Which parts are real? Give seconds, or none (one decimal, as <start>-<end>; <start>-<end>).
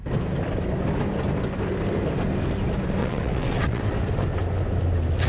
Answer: 0.0-3.0; 3.8-5.3